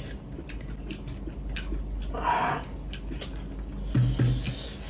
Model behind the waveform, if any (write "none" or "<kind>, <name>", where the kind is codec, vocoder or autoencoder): none